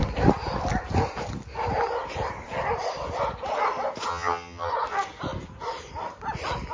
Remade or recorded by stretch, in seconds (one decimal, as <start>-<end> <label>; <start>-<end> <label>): 0.0-4.1 recorded; 4.1-4.7 remade; 4.7-6.7 recorded